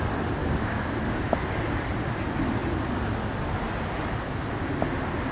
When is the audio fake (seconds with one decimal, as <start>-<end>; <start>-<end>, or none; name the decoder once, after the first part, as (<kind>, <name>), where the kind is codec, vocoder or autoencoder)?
0.4-0.9 (codec, DAC)